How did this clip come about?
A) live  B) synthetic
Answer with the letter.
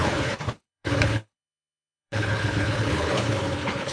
B